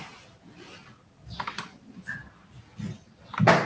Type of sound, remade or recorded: recorded